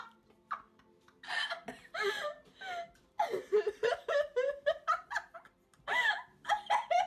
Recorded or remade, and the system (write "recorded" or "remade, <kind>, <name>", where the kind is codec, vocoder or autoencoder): recorded